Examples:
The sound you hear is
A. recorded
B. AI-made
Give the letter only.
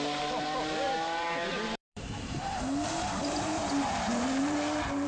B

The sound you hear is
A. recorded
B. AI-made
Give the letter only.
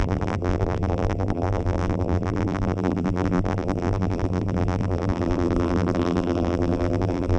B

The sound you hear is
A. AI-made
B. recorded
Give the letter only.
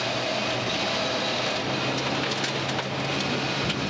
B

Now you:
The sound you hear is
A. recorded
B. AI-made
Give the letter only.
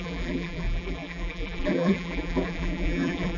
B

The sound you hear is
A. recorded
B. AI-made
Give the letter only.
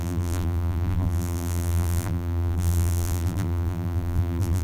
B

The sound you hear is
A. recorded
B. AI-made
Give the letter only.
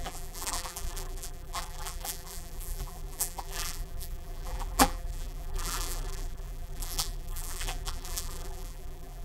B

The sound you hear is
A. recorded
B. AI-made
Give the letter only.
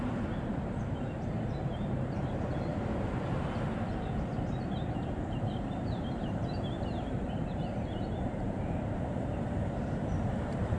B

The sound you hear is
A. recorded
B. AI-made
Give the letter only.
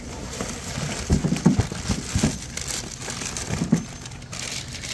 A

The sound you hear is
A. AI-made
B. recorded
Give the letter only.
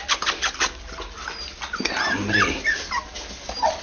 A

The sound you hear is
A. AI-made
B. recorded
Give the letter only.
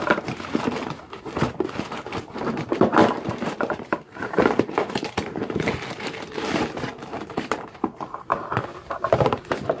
A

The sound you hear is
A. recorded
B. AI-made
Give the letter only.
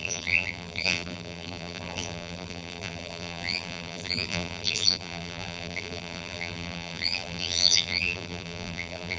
B